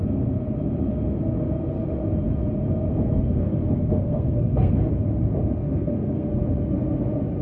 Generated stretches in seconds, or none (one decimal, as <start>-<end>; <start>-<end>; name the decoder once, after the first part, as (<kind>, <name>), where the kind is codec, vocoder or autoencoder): 2.9-4.9 (codec, SNAC); 5.6-6.3

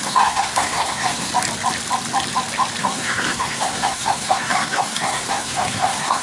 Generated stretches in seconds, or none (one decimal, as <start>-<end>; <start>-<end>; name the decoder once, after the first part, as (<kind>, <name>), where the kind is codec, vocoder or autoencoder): 0.0-1.3 (codec, SNAC); 2.8-6.2